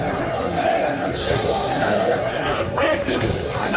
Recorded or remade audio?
remade